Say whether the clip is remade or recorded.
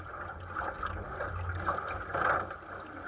recorded